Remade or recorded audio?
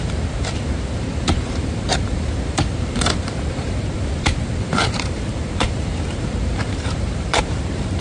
remade